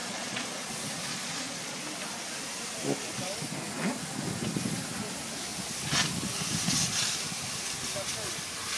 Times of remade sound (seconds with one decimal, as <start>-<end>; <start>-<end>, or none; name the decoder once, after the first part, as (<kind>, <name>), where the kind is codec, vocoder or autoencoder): 0.0-0.7 (vocoder, Vocos); 1.1-1.8